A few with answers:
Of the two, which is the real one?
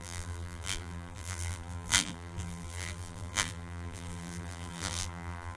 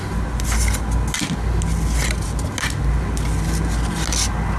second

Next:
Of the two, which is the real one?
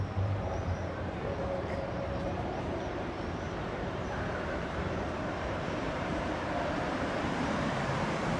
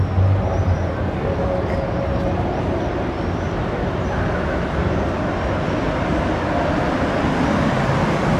second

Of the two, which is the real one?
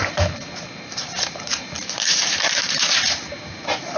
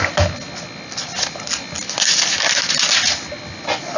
second